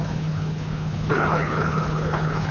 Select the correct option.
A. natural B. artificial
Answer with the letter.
B